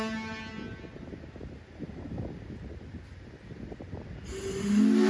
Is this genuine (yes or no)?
yes